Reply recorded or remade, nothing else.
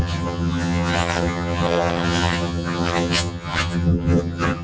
remade